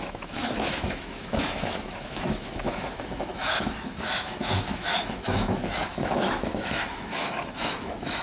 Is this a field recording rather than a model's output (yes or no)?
no